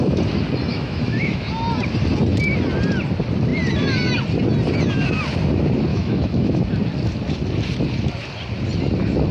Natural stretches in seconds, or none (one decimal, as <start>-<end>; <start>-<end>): 0.0-0.7; 1.5-5.9; 6.6-9.3